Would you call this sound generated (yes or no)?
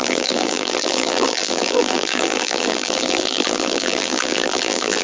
yes